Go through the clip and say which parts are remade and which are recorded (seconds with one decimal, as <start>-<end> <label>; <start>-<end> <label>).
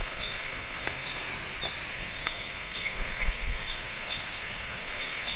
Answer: 0.0-1.3 remade; 1.3-1.9 recorded; 1.9-5.4 remade